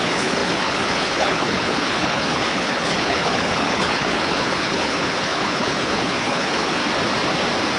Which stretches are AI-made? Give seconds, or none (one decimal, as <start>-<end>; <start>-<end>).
0.0-6.8